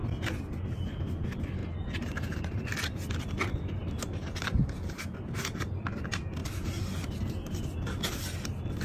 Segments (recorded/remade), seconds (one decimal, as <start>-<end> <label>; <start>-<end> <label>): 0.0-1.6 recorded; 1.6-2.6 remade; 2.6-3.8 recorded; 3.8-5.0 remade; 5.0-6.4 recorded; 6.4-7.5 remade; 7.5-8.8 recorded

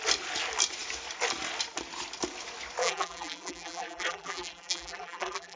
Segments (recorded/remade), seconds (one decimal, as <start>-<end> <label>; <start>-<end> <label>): 0.0-2.8 recorded; 2.8-5.6 remade

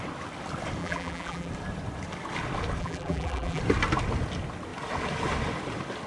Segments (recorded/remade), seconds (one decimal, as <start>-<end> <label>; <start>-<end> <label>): 0.0-0.8 recorded; 0.8-1.5 remade; 1.5-2.8 recorded; 2.8-3.6 remade; 3.6-6.1 recorded

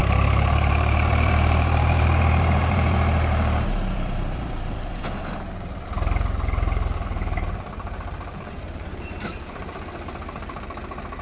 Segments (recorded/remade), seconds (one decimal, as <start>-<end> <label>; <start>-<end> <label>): 0.0-11.2 remade

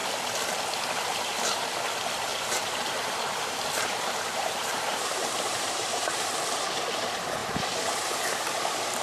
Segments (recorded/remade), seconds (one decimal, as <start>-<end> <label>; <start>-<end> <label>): 0.0-2.3 recorded; 2.3-6.0 remade; 6.0-9.0 recorded

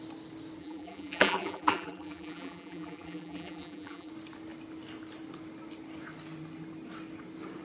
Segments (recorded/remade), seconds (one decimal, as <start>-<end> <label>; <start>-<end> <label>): 0.0-0.6 recorded; 0.6-4.1 remade; 4.1-7.6 recorded